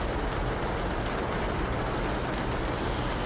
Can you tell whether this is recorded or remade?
recorded